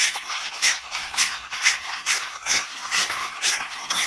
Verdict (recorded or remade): remade